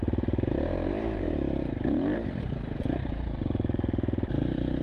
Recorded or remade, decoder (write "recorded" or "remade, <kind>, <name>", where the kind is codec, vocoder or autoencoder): remade, vocoder, BigVGAN v2